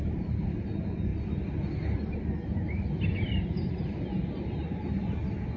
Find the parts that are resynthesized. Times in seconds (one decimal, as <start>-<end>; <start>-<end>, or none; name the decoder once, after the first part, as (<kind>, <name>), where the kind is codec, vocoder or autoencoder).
none